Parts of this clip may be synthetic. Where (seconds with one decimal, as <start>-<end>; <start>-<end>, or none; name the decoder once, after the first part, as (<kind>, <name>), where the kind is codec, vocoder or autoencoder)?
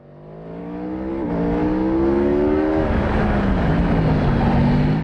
0.6-1.1 (codec, DAC); 1.6-3.7